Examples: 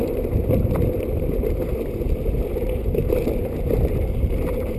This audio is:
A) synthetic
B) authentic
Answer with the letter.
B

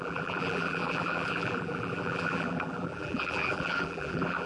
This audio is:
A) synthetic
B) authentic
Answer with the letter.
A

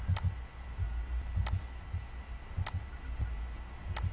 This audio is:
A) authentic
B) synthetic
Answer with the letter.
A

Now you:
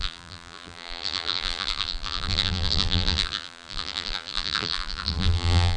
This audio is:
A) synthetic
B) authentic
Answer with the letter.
A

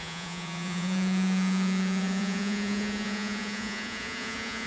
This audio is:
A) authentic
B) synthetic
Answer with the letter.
B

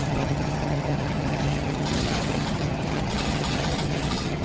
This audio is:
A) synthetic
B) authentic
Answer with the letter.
A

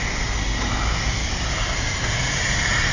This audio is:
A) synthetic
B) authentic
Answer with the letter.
B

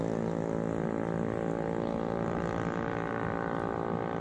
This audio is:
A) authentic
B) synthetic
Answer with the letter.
A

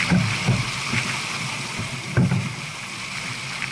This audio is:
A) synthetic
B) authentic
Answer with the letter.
B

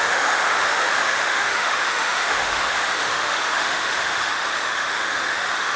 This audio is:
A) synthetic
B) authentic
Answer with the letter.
A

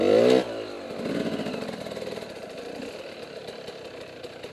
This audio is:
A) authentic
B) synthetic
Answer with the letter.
A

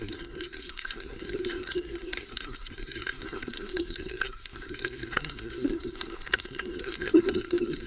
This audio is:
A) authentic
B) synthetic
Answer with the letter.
B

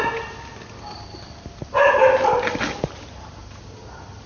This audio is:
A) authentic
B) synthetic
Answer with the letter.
A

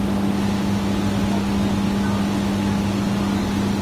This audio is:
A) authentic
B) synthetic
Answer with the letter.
A